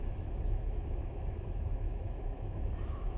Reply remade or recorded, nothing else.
remade